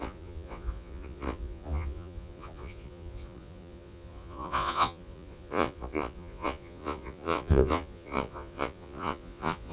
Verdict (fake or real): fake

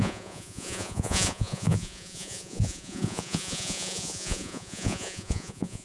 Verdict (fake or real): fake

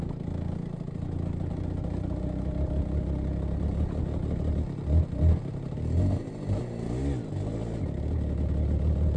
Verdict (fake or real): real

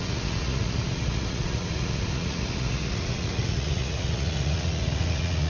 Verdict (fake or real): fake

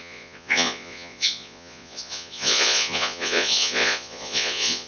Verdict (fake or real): fake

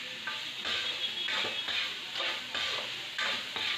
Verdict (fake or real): real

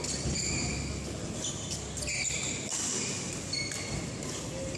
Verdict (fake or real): real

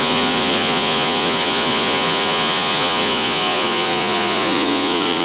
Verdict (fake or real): fake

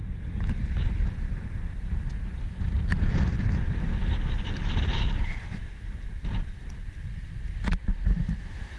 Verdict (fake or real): real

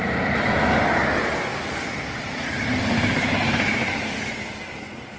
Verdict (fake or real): real